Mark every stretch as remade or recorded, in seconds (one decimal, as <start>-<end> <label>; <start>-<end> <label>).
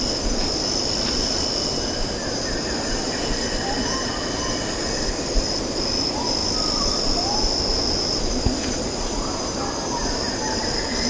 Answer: 0.0-11.1 recorded